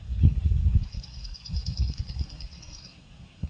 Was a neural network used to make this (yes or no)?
yes